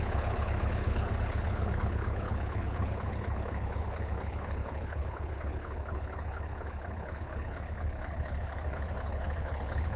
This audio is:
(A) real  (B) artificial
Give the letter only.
B